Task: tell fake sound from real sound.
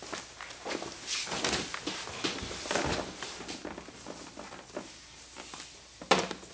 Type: real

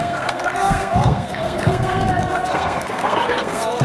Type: fake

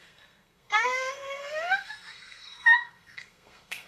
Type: fake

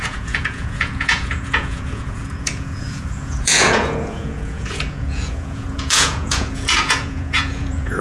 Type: fake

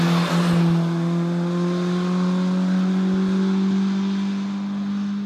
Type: real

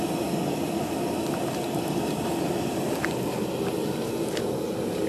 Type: real